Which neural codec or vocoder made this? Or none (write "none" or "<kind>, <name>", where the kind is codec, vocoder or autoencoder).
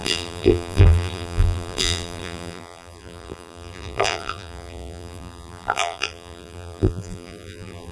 vocoder, BigVGAN v2